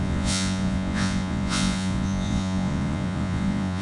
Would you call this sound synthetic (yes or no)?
yes